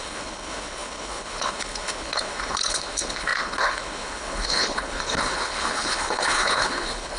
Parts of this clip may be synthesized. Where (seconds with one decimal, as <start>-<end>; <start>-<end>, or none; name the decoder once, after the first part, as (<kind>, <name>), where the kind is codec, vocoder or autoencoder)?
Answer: 0.0-7.2 (codec, HILCodec)